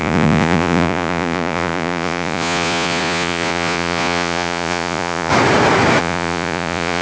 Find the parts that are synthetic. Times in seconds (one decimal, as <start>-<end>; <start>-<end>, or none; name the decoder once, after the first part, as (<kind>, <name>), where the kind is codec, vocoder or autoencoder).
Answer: 0.0-5.3 (vocoder, Vocos); 6.0-7.0